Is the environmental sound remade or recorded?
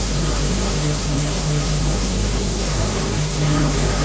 remade